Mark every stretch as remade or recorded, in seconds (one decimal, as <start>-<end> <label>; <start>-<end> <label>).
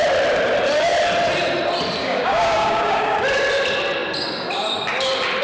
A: 0.0-2.0 recorded; 2.0-3.2 remade; 3.2-5.4 recorded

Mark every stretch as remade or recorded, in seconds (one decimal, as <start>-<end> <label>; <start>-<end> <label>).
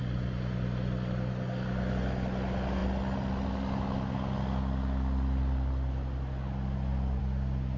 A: 0.0-7.8 recorded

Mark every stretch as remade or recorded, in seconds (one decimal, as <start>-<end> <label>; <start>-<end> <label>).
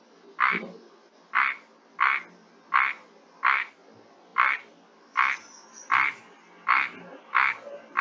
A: 0.0-8.0 recorded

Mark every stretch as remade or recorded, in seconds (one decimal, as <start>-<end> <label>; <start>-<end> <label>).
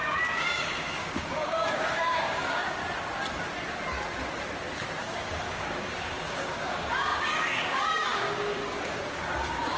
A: 0.0-2.8 remade; 2.8-5.0 recorded; 5.0-9.8 remade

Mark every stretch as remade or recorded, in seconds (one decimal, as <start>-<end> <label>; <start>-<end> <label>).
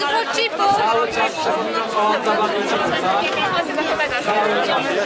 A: 0.0-5.1 recorded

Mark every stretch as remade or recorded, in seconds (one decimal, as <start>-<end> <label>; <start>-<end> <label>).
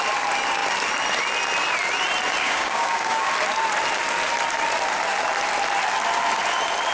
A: 0.0-2.4 recorded; 2.4-3.3 remade; 3.3-6.9 recorded